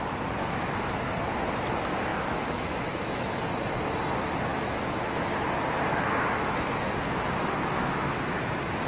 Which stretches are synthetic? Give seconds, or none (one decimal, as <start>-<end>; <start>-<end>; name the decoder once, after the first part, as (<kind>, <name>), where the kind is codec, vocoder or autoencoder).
0.4-0.9 (autoencoder, DAC-VAE); 2.1-3.3; 4.5-5.4; 5.9-8.9